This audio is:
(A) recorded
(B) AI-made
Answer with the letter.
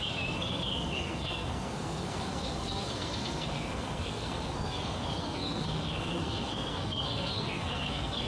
B